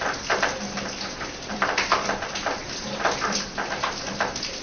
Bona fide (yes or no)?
no